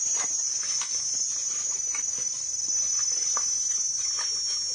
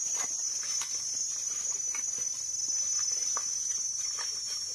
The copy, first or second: second